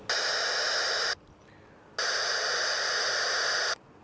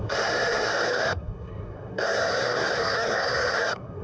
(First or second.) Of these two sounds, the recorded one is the first